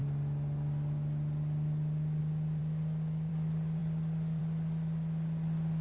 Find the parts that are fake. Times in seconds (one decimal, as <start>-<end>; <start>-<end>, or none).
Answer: none